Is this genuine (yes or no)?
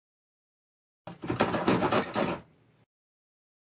yes